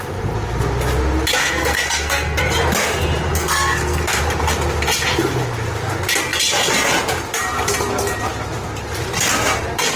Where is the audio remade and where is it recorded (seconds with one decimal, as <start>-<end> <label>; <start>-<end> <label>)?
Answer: 0.0-1.4 recorded; 1.4-2.4 remade; 2.4-3.3 recorded; 3.3-4.2 remade; 4.2-10.0 recorded